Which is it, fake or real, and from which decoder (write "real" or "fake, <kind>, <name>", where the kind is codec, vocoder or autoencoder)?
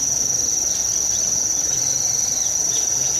real